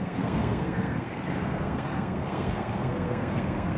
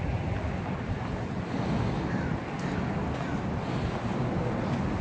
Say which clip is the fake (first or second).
first